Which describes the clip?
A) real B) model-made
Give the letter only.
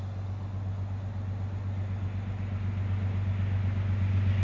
A